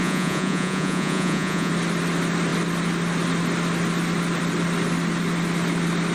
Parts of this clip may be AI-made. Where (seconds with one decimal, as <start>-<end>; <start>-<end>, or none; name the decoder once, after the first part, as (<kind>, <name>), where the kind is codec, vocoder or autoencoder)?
0.0-1.7 (vocoder, Vocos)